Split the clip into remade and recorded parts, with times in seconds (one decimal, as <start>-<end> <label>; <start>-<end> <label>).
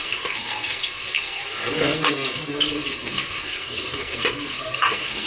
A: 0.0-5.3 remade